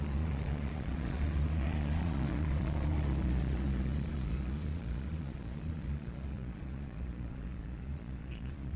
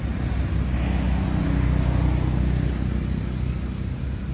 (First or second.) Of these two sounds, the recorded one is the second